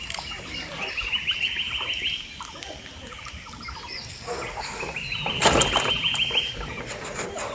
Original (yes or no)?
yes